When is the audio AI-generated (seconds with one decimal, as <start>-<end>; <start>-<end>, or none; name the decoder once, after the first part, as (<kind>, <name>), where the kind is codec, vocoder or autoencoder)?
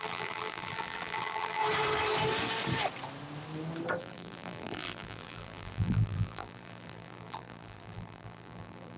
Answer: 0.0-1.6 (vocoder, BigVGAN v2); 4.0-9.0